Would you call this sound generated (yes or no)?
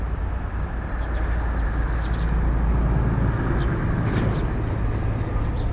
no